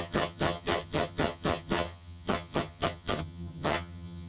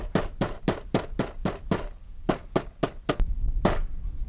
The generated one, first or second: first